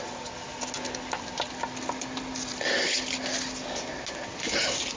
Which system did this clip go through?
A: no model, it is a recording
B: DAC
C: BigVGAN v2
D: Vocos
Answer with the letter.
A